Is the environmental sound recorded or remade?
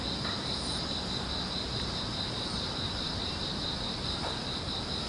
recorded